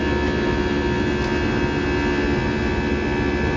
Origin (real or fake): real